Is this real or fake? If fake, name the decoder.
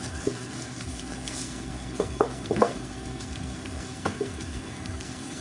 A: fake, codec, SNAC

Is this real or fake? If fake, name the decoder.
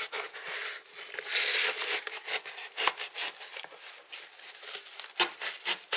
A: real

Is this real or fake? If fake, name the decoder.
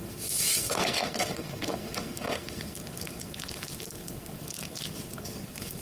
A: fake, codec, SNAC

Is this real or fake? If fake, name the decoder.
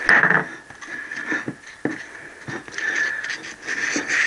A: real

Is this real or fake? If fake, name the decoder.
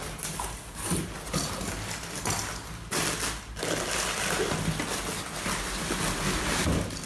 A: real